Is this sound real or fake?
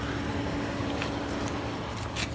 real